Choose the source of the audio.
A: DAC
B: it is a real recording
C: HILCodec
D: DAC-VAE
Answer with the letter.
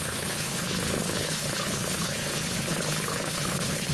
C